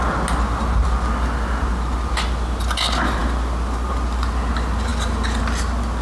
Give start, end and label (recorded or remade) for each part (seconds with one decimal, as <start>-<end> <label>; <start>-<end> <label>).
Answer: 0.0-6.0 recorded